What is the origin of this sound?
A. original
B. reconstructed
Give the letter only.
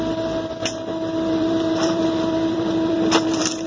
B